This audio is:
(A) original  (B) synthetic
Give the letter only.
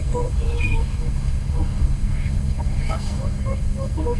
B